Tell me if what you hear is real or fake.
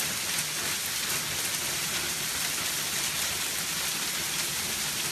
real